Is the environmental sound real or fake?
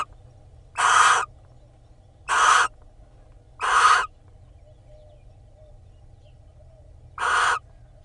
real